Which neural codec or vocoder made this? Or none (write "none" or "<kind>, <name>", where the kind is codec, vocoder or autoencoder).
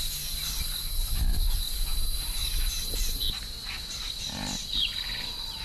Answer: none